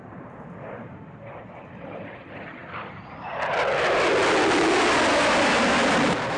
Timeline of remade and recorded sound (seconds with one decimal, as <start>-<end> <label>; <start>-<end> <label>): 0.0-4.1 remade; 4.1-5.4 recorded; 5.4-6.4 remade